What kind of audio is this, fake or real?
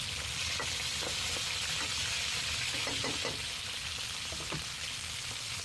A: real